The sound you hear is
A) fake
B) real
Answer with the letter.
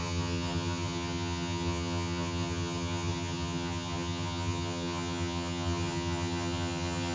A